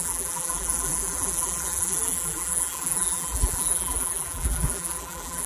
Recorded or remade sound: remade